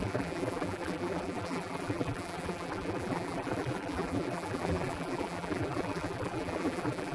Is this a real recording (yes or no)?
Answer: no